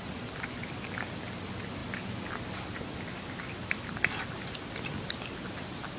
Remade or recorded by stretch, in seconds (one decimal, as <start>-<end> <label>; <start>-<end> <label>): 0.0-6.0 recorded